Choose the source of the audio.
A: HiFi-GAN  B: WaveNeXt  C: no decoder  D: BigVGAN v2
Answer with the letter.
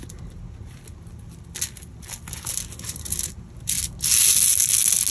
C